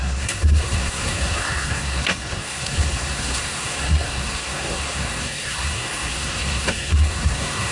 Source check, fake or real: fake